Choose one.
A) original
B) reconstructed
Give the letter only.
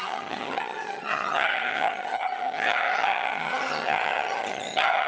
B